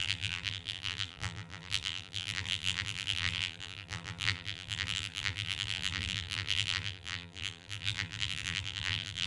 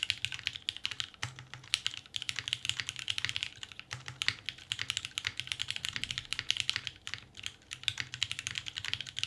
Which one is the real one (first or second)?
second